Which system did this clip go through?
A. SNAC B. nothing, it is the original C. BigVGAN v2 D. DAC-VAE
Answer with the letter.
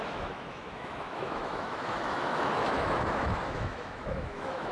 D